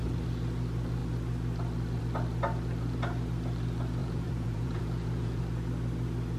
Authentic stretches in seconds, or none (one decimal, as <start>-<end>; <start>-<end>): 0.0-4.0; 5.4-6.4